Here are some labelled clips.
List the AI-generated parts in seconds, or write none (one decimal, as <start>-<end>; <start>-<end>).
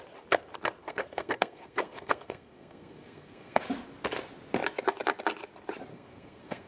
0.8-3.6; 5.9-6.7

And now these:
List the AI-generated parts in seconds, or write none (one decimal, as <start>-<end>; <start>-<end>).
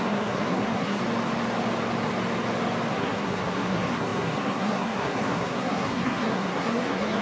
0.0-1.0; 2.9-7.2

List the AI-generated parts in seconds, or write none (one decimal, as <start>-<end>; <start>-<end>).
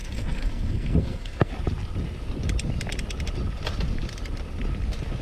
0.0-1.5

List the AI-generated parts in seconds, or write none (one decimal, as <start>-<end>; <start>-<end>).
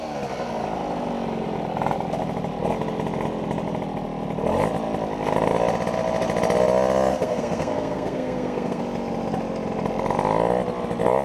7.1-8.8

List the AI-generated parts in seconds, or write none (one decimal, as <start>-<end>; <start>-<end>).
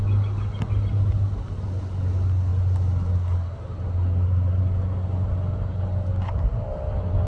none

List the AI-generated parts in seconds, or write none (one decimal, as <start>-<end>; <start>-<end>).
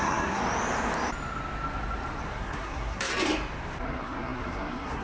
0.0-0.4; 2.3-3.1; 3.8-5.0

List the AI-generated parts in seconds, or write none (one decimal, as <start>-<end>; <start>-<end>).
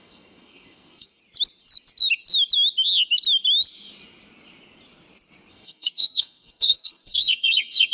0.0-1.2; 5.5-7.9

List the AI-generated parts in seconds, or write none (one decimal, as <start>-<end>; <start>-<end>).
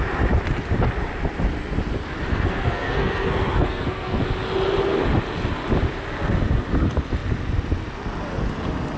2.3-4.2